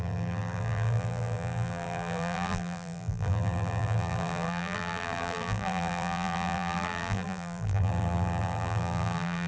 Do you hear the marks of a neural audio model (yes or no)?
yes